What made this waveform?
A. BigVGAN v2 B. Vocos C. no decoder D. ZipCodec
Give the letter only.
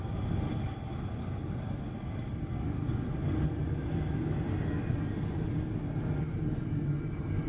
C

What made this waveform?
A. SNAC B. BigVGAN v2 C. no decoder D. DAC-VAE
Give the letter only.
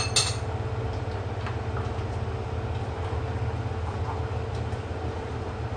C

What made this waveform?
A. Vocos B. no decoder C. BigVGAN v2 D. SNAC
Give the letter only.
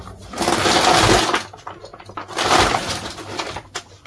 B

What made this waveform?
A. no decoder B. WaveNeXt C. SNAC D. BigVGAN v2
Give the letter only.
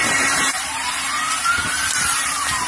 D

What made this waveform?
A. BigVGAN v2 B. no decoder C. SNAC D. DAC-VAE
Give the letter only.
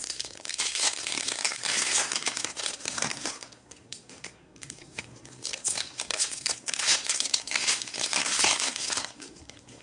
C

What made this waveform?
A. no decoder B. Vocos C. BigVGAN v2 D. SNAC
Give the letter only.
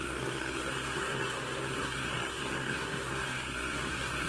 D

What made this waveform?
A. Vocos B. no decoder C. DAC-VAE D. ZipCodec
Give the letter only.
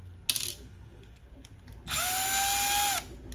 B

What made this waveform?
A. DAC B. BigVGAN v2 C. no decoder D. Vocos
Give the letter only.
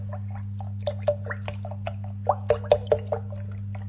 C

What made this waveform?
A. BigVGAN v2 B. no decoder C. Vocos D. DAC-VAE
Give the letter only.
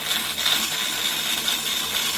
B